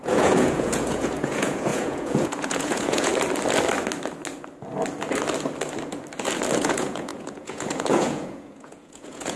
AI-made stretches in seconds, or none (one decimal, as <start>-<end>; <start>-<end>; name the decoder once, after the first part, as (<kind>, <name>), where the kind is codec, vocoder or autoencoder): 0.0-3.1 (vocoder, Vocos); 6.6-9.4